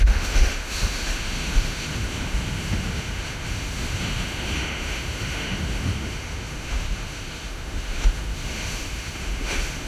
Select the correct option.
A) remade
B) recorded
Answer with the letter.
A